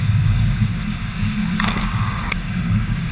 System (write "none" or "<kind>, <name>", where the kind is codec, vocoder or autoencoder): codec, DAC